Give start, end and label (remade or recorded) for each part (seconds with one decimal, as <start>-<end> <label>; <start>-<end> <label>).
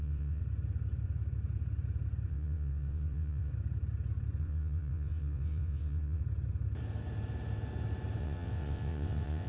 0.0-0.4 remade; 0.4-2.3 recorded; 2.3-3.5 remade; 3.5-4.4 recorded; 4.4-6.2 remade; 6.2-8.2 recorded; 8.2-9.5 remade